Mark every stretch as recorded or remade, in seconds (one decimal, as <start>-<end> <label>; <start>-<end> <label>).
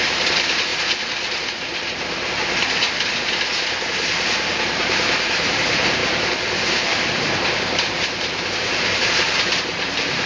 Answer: 0.0-0.7 remade; 0.7-3.9 recorded; 3.9-10.3 remade